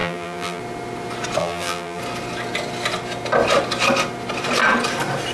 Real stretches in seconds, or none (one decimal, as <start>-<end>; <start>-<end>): 0.6-1.4; 2.0-5.3